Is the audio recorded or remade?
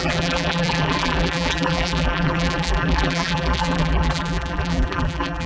remade